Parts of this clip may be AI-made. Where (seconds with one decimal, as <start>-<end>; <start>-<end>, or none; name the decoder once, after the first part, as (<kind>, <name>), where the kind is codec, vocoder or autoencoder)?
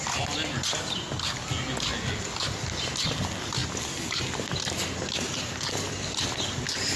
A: none